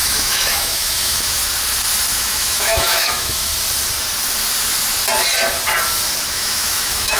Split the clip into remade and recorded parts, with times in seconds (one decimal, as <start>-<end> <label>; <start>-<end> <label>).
0.0-1.4 remade; 1.4-2.1 recorded; 2.1-3.5 remade; 3.5-6.3 recorded; 6.3-7.2 remade